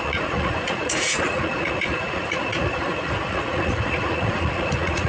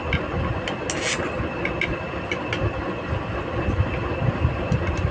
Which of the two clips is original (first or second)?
second